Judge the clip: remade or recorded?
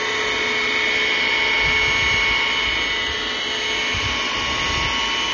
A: recorded